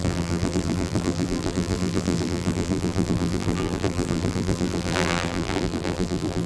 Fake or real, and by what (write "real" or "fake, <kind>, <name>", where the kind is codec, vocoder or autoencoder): fake, vocoder, BigVGAN v2